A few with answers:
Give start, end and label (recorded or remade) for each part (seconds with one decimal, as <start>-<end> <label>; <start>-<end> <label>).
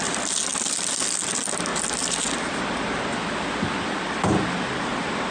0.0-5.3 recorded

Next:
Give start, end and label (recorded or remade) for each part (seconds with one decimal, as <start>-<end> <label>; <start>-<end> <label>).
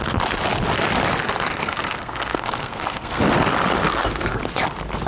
0.0-1.5 recorded; 1.5-3.2 remade; 3.2-3.8 recorded; 3.8-4.4 remade; 4.4-5.1 recorded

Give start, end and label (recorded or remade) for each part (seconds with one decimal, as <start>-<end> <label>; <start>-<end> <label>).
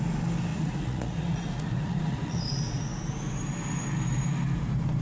0.0-0.5 recorded; 0.5-2.4 remade; 2.4-5.0 recorded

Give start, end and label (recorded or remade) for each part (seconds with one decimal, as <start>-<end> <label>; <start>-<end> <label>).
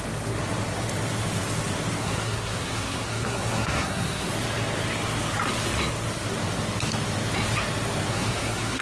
0.0-2.0 recorded; 2.0-4.3 remade; 4.3-8.1 recorded; 8.1-8.8 remade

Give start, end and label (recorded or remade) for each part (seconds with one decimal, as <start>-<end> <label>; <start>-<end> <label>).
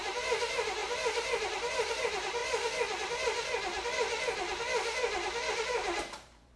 0.0-2.4 remade; 2.4-5.5 recorded; 5.5-6.6 remade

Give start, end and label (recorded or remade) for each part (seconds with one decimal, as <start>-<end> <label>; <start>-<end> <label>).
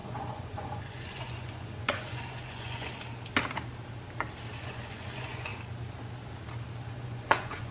0.0-2.9 remade; 2.9-4.6 recorded; 4.6-5.5 remade; 5.5-6.9 recorded; 6.9-7.7 remade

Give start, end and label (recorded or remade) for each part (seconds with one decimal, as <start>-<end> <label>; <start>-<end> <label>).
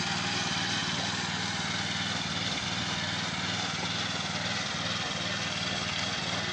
0.0-6.5 recorded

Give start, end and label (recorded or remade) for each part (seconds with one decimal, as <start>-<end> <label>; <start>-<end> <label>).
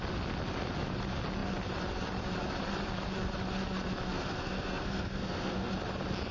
0.0-4.1 recorded; 4.1-5.7 remade; 5.7-6.3 recorded